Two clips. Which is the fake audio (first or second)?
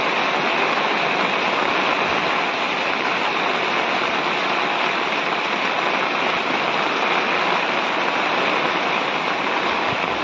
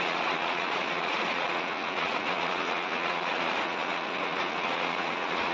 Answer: second